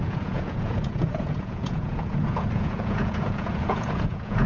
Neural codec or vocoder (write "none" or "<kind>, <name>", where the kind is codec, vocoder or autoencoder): vocoder, Vocos